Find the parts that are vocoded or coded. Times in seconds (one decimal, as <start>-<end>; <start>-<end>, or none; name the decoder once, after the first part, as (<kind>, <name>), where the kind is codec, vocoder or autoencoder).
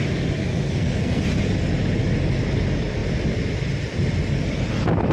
0.4-1.2 (codec, SNAC)